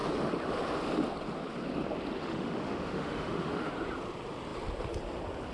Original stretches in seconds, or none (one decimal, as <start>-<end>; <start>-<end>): 0.0-2.2; 3.7-5.5